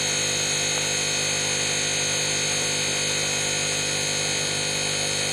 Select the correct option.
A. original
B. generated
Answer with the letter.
A